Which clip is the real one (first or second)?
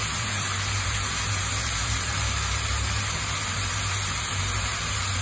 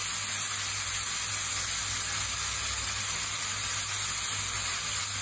second